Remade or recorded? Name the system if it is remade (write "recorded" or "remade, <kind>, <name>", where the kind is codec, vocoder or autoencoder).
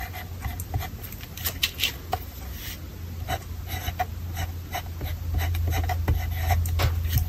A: recorded